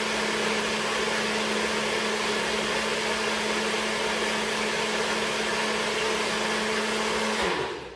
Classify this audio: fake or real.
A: real